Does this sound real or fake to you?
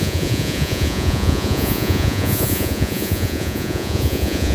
fake